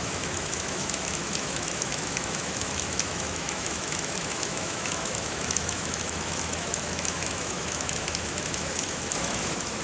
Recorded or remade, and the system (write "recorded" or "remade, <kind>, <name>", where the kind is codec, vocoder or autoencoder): remade, autoencoder, DAC-VAE